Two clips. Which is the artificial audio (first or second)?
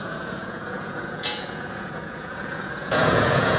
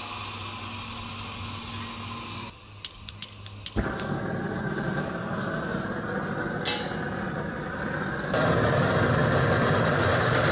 first